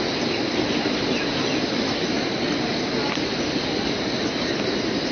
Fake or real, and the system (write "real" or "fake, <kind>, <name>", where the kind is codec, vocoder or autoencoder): real